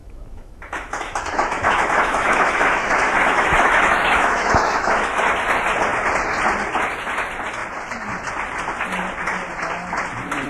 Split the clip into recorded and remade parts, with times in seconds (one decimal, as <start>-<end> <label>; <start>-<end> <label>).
0.0-5.2 remade; 5.2-10.5 recorded

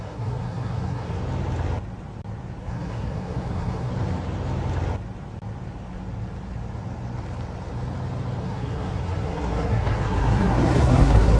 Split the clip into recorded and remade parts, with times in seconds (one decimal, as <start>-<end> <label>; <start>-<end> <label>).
0.0-1.2 remade; 1.2-2.6 recorded; 2.6-3.9 remade; 3.9-8.4 recorded; 8.4-11.4 remade

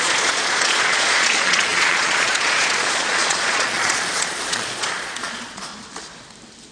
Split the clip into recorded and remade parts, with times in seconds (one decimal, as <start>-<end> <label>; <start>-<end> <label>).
0.0-5.7 remade; 5.7-6.7 recorded

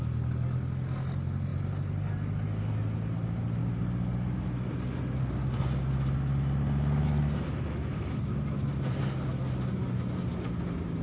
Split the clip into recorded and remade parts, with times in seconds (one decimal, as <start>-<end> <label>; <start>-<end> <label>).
0.0-11.0 recorded

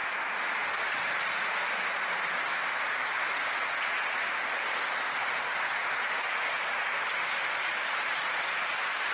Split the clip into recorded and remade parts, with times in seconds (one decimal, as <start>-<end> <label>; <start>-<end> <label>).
0.0-9.1 recorded

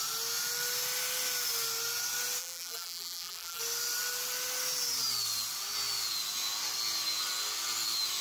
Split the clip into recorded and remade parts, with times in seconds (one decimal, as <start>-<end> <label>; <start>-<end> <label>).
0.0-2.4 recorded; 2.4-3.6 remade; 3.6-8.2 recorded

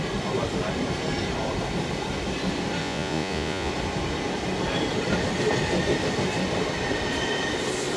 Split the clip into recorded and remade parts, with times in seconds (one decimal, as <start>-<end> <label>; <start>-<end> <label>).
0.0-2.8 recorded; 2.8-3.7 remade; 3.7-8.0 recorded

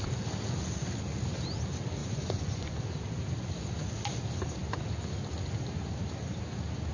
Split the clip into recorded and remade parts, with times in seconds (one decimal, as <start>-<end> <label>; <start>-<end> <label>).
0.0-2.0 recorded; 2.0-2.7 remade; 2.7-6.9 recorded